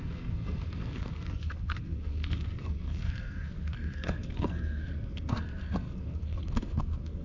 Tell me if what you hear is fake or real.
fake